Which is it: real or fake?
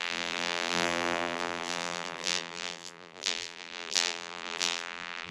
fake